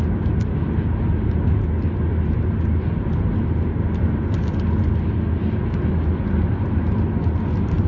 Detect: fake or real real